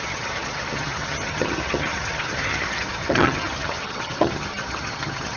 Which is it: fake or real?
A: fake